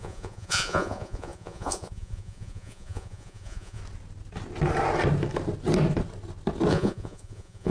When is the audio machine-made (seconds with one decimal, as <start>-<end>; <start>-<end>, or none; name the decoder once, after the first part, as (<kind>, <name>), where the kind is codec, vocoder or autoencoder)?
0.0-3.8 (vocoder, Vocos); 6.7-7.7